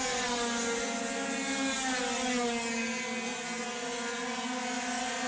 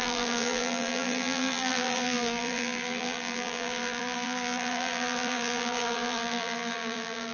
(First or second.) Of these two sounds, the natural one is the first